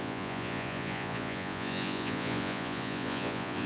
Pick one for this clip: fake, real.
fake